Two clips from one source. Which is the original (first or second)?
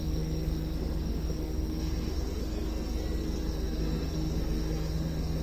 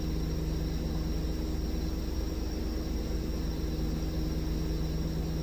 second